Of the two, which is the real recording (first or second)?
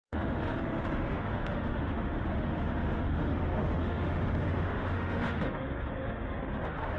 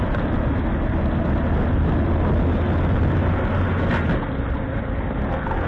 second